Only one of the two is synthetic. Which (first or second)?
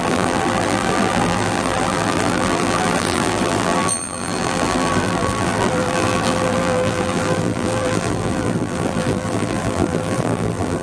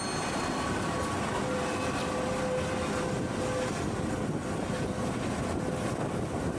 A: first